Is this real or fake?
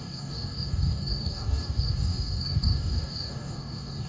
fake